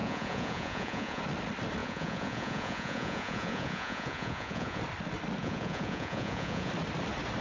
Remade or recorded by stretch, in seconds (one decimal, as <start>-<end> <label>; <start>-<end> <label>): 0.0-1.2 remade; 1.2-1.8 recorded; 1.8-4.8 remade; 4.8-5.4 recorded; 5.4-6.7 remade; 6.7-7.4 recorded